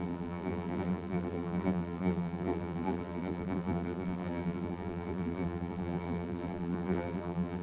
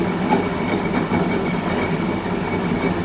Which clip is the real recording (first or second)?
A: second